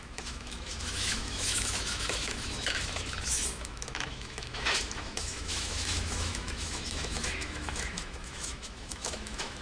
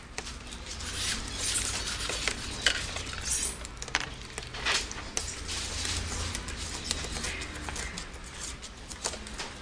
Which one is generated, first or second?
first